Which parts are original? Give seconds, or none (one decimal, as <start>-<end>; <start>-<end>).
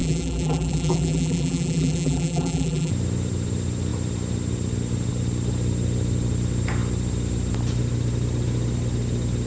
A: 2.9-9.5